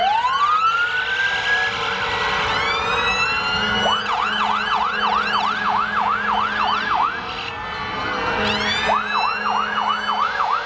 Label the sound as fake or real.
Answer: real